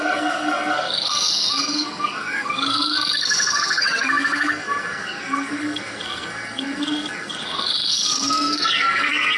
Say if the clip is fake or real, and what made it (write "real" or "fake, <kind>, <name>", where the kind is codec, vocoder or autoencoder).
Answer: fake, codec, SNAC